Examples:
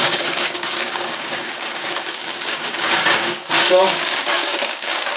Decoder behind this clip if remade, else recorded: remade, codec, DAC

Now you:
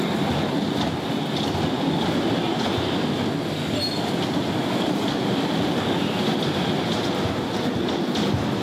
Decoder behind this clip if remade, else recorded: recorded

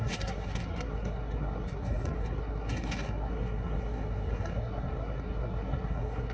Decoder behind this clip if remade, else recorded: remade, codec, SNAC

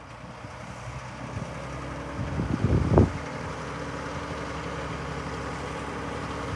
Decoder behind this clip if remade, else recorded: recorded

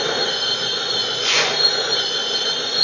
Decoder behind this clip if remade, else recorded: remade, vocoder, Vocos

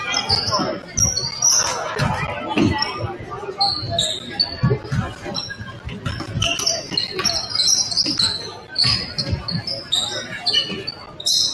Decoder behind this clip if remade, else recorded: recorded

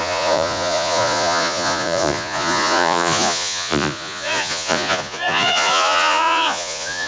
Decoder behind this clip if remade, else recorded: remade, vocoder, Vocos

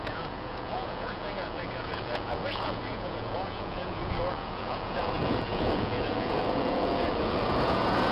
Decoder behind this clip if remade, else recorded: remade, vocoder, Vocos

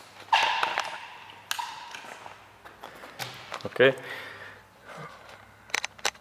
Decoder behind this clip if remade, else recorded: recorded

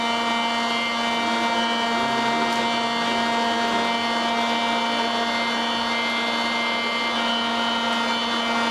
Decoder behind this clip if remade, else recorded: recorded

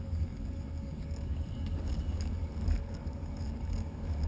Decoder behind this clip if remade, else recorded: remade, codec, DAC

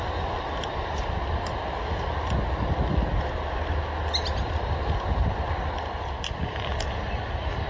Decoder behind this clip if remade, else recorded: recorded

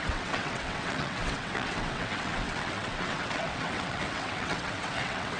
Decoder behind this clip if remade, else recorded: remade, vocoder, WaveNeXt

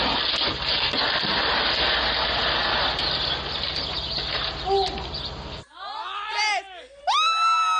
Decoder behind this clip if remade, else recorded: recorded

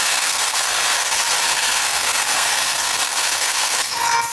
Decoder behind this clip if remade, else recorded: remade, codec, SNAC